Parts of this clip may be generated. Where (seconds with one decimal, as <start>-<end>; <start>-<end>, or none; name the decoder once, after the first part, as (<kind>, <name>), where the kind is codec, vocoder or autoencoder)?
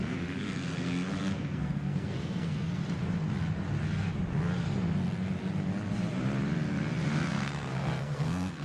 0.0-2.8 (codec, SNAC); 7.3-8.6